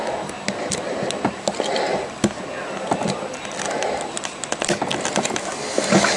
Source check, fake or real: real